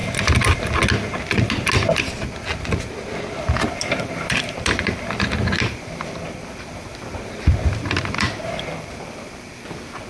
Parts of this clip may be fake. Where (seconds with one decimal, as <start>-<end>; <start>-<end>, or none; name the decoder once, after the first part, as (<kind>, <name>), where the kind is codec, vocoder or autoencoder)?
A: 3.7-10.1 (vocoder, BigVGAN v2)